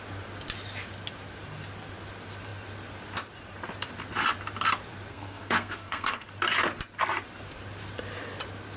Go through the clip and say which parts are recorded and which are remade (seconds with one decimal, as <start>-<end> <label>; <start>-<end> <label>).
0.0-5.1 recorded; 5.1-6.3 remade; 6.3-8.8 recorded